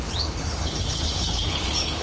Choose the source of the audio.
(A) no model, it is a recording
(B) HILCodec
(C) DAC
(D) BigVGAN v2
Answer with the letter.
B